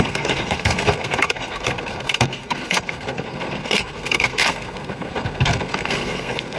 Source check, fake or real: fake